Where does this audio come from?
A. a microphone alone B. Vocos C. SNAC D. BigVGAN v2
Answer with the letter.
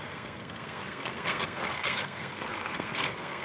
C